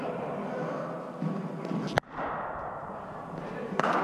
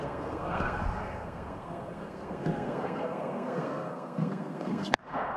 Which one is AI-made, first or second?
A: second